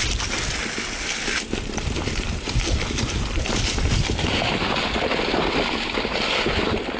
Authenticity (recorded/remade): recorded